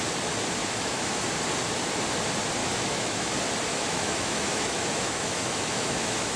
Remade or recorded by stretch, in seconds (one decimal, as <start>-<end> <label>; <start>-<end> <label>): 0.0-0.6 recorded; 0.6-1.2 remade; 1.2-2.6 recorded; 2.6-3.3 remade; 3.3-3.7 recorded; 3.7-6.4 remade